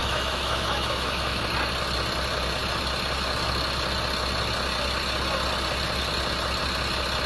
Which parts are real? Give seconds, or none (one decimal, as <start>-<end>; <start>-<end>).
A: 1.4-7.3